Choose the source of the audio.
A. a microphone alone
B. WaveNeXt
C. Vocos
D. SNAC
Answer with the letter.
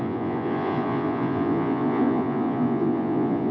C